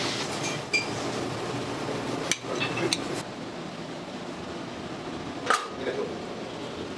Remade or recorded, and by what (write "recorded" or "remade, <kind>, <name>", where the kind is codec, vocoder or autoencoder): recorded